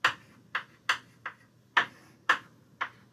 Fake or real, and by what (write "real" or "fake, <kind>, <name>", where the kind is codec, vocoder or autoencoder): real